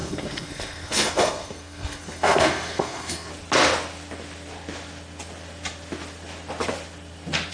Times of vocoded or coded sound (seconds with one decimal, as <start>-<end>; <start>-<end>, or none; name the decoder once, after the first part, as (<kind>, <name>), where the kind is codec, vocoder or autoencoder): 0.0-3.3 (codec, SNAC)